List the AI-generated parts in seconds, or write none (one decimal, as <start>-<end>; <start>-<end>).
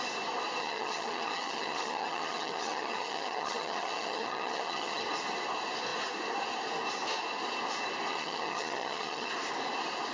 0.6-5.0; 8.1-9.3